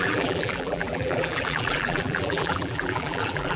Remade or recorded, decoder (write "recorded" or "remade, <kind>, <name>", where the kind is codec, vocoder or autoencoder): remade, vocoder, BigVGAN v2